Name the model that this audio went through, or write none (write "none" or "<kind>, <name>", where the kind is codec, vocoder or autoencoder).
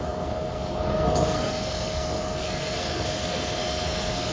codec, SNAC